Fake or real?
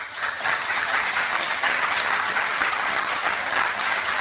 fake